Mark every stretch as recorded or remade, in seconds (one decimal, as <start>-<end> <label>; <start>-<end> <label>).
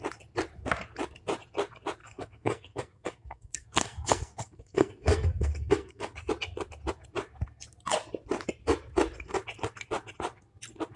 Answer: 0.0-2.0 recorded; 2.0-6.3 remade; 6.3-11.0 recorded